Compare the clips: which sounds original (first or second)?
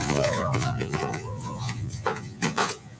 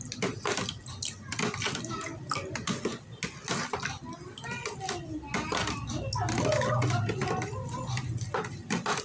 second